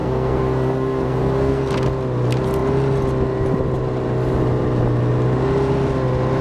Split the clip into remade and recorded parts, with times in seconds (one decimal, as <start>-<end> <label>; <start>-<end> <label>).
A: 0.0-1.6 remade; 1.6-6.4 recorded